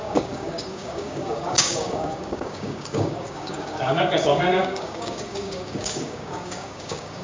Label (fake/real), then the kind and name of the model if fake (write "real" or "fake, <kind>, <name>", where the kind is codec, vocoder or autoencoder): fake, codec, DAC